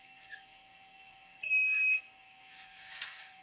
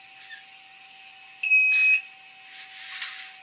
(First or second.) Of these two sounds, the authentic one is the second